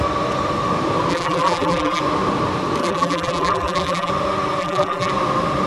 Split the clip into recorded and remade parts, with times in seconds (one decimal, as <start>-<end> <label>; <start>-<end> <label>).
0.0-1.1 recorded; 1.1-2.0 remade; 2.0-2.8 recorded; 2.8-4.1 remade; 4.1-4.6 recorded; 4.6-5.1 remade; 5.1-5.7 recorded